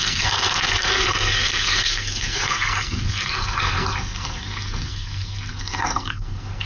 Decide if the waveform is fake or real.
fake